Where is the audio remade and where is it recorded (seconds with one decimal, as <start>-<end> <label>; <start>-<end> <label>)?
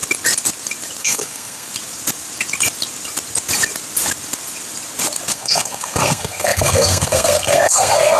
0.0-1.0 recorded; 1.0-1.7 remade; 1.7-5.3 recorded; 5.3-8.2 remade